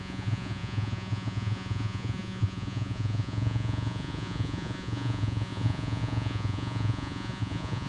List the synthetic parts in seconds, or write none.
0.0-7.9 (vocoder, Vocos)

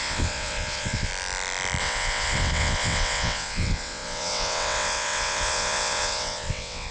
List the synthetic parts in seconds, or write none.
0.0-1.1 (vocoder, WaveNeXt); 1.8-6.9